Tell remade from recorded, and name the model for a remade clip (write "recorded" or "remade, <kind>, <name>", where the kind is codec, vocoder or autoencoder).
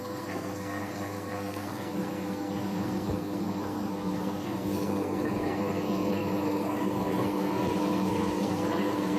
remade, codec, SNAC